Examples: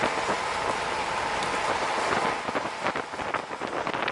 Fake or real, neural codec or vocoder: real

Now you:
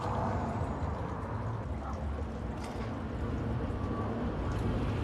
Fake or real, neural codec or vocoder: real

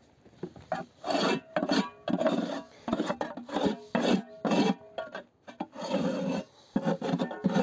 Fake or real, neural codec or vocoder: real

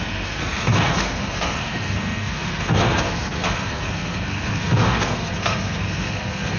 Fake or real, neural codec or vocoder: fake, codec, SNAC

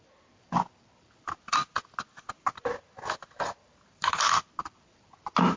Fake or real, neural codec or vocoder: real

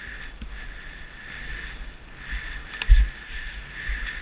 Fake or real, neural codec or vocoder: real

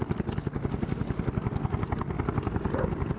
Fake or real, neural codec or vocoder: real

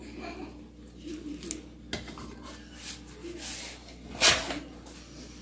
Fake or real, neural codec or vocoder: real